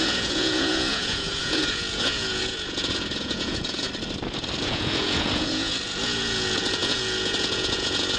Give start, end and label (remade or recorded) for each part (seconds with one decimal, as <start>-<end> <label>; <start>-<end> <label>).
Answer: 0.0-3.9 remade; 3.9-4.6 recorded; 4.6-8.2 remade